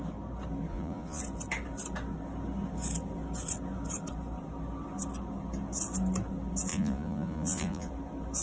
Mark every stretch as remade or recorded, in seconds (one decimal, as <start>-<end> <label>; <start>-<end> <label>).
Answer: 0.0-0.7 recorded; 0.7-1.2 remade; 1.2-6.7 recorded; 6.7-7.9 remade; 7.9-8.4 recorded